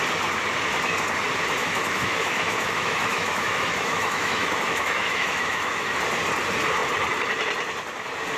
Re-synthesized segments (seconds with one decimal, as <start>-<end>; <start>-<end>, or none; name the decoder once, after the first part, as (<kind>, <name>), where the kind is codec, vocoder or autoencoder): 1.6-6.0 (autoencoder, DAC-VAE)